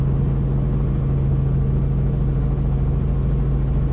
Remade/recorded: recorded